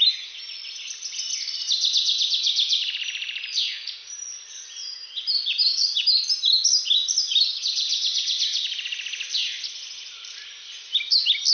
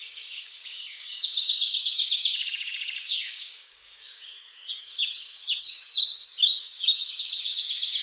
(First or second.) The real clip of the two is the first